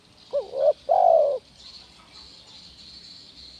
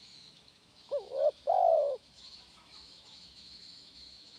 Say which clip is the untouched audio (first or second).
first